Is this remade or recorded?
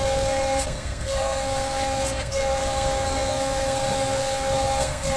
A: remade